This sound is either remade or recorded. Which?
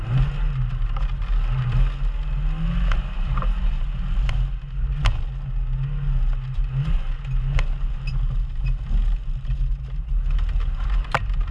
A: recorded